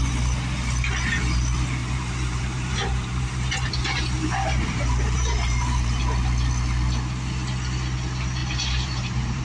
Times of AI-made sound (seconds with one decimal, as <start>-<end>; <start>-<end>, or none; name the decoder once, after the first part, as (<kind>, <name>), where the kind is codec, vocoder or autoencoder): 1.8-6.0 (vocoder, BigVGAN v2); 8.4-9.4